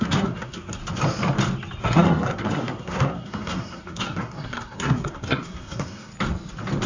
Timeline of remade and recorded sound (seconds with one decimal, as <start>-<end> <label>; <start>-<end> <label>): 0.0-0.8 remade; 0.8-1.8 recorded; 1.8-6.1 remade; 6.1-6.9 recorded